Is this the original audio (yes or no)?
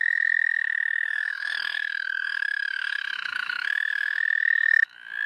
no